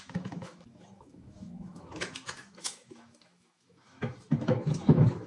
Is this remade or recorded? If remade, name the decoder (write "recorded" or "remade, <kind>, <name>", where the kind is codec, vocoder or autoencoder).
remade, autoencoder, DAC-VAE